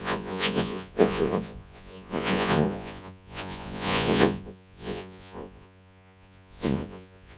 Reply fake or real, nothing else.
fake